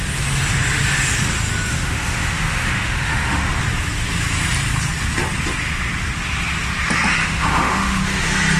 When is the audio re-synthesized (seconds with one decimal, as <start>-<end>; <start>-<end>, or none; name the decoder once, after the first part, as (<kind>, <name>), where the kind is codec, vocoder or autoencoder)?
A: 1.7-3.6 (autoencoder, DAC-VAE); 7.2-8.0